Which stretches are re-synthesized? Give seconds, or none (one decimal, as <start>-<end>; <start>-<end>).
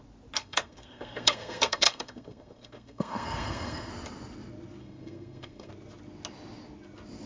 0.4-3.9; 4.8-5.7